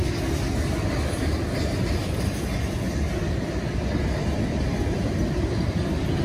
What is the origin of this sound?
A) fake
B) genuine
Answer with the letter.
B